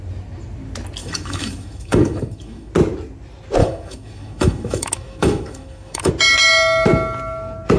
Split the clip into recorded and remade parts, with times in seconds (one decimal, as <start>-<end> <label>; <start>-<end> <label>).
0.0-1.0 recorded; 1.0-2.7 remade; 2.7-3.6 recorded; 3.6-6.1 remade; 6.1-7.8 recorded